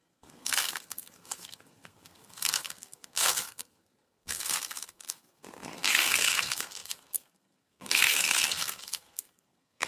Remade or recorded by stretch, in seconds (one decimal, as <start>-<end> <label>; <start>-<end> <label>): 0.0-9.9 remade